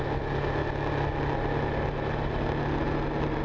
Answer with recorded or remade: recorded